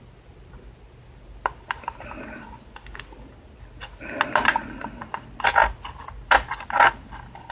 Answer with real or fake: real